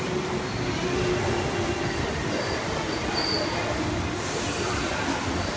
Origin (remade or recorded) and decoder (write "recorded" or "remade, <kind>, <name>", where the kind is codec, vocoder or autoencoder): recorded